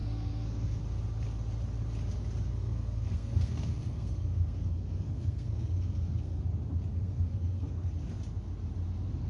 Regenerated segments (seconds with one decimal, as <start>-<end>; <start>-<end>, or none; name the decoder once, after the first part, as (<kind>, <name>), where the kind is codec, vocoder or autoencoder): 0.0-0.8 (codec, SNAC); 2.5-6.4; 6.9-7.9